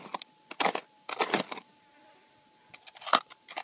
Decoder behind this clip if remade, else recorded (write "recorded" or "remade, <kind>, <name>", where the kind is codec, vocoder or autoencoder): recorded